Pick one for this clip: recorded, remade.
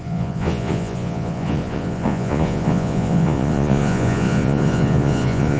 remade